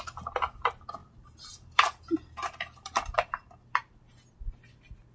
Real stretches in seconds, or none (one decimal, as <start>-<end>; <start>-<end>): 0.0-1.0; 4.1-5.1